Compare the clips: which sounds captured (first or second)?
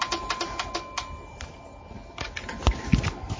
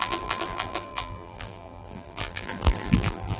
first